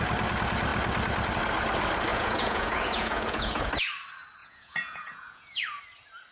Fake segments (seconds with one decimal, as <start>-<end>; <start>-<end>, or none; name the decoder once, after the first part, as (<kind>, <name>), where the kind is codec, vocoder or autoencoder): 2.1-3.7 (vocoder, Vocos); 4.4-5.8